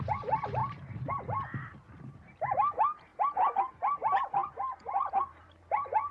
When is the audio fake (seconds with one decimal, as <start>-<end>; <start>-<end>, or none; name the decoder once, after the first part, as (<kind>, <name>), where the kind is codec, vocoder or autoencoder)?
0.0-3.1 (vocoder, BigVGAN v2); 4.0-4.4; 5.1-6.1